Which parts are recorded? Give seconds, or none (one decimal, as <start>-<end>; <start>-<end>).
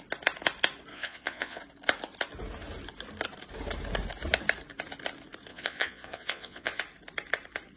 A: 0.0-0.9; 1.6-5.5; 6.8-7.8